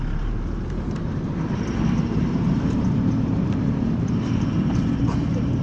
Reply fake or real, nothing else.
fake